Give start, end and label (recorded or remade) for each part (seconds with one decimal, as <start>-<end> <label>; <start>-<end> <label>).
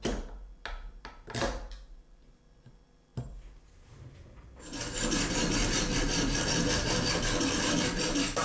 0.0-8.4 recorded